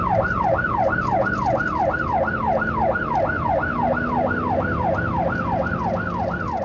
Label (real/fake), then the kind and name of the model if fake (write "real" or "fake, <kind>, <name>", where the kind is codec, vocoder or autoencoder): real